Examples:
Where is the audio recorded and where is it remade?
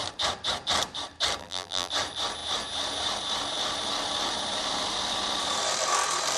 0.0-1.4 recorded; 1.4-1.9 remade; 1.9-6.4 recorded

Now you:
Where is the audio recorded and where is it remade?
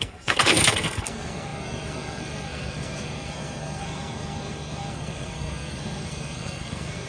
0.0-7.1 remade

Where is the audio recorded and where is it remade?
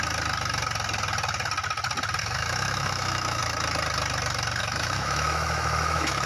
0.0-2.2 recorded; 2.2-3.4 remade; 3.4-4.6 recorded; 4.6-6.3 remade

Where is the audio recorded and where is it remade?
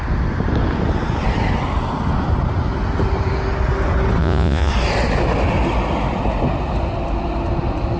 0.0-4.2 recorded; 4.2-4.7 remade; 4.7-8.0 recorded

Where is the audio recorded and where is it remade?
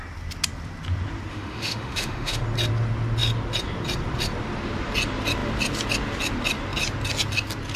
0.0-1.3 recorded; 1.3-2.4 remade; 2.4-7.8 recorded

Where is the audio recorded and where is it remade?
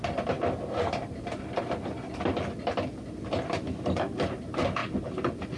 0.0-5.6 recorded